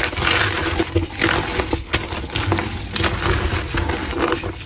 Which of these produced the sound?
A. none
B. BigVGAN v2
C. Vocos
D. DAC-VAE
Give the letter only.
A